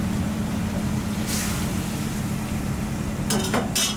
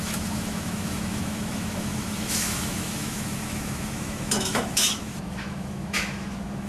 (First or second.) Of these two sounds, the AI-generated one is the second